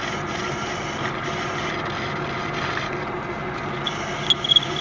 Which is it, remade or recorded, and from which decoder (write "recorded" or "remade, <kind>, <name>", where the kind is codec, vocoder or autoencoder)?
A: recorded